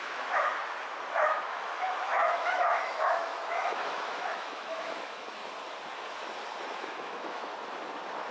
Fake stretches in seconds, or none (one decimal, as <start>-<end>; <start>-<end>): 0.0-0.5; 1.1-5.4; 6.7-7.5